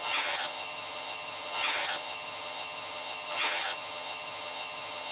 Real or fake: fake